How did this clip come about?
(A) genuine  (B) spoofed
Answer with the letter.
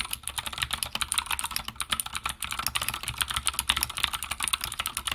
A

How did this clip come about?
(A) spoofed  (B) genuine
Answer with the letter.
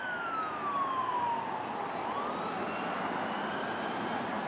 B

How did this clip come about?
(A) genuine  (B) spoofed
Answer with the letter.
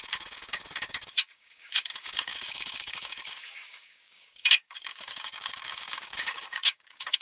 B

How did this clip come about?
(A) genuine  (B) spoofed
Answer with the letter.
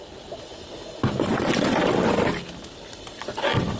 A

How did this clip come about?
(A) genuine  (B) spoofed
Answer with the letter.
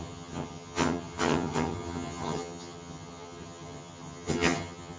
B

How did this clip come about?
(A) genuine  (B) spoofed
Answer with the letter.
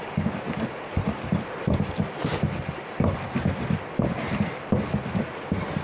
A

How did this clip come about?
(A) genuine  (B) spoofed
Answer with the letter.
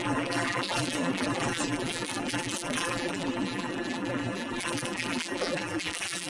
B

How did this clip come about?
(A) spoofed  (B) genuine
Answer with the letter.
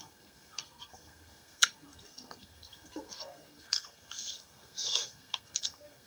A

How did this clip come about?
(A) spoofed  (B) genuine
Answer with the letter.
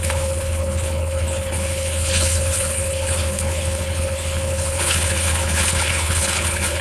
A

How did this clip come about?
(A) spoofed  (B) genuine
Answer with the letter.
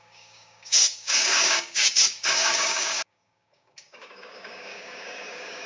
A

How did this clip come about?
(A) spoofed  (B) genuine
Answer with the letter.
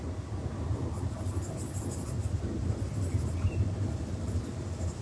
B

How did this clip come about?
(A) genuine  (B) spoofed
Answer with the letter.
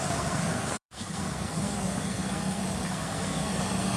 B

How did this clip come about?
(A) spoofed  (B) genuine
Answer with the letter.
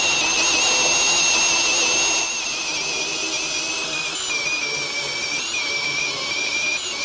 B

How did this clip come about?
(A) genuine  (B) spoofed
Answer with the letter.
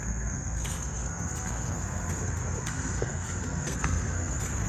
B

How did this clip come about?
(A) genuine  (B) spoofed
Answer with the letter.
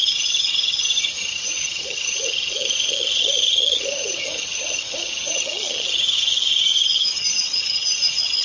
B